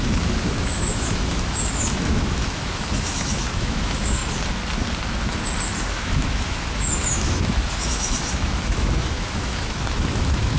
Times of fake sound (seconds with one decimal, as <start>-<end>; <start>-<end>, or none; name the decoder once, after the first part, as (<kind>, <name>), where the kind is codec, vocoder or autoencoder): 0.0-4.2 (autoencoder, DAC-VAE); 5.8-10.6